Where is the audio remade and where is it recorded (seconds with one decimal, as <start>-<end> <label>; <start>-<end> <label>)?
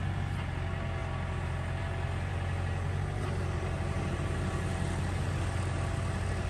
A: 0.0-6.5 recorded